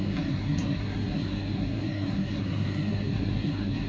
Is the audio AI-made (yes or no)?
yes